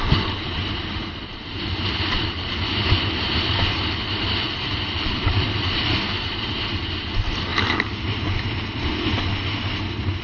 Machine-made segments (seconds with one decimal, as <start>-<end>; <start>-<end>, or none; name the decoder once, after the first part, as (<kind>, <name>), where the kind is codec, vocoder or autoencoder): 1.3-6.0 (vocoder, BigVGAN v2); 7.5-8.2